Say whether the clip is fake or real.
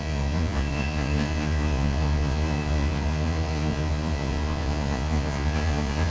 fake